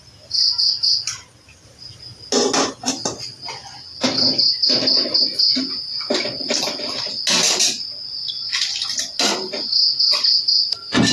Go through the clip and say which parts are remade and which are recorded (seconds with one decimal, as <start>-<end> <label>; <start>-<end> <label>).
0.0-11.1 recorded